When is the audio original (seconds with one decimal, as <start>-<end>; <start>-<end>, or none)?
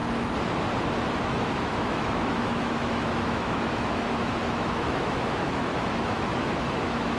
0.0-1.2